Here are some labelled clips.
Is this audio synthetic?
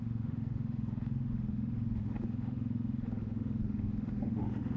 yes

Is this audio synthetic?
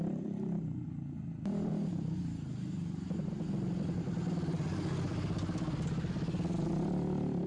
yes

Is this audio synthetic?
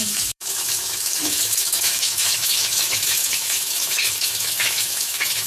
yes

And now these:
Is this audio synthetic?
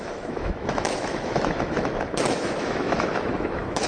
yes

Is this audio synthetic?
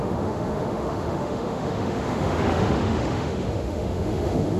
yes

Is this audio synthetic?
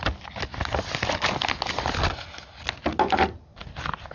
no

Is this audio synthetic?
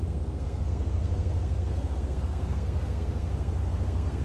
yes